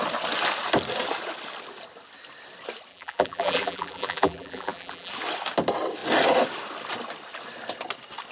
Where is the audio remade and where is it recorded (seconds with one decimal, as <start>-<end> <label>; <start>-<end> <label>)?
0.0-2.9 recorded; 2.9-5.1 remade; 5.1-8.3 recorded